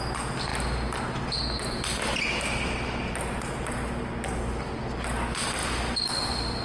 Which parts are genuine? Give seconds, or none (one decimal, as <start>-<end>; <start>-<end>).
0.0-5.6; 6.1-6.6